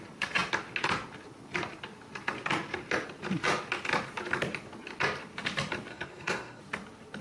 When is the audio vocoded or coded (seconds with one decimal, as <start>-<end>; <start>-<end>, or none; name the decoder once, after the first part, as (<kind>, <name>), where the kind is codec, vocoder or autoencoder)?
5.9-6.6 (codec, SNAC)